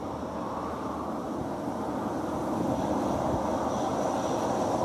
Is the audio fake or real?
real